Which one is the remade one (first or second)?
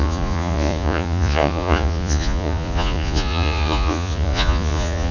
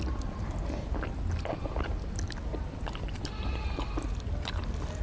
first